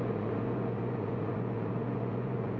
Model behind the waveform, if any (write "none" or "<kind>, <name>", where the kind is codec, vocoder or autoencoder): vocoder, Vocos